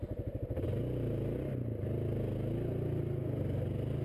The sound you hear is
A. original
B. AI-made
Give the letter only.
A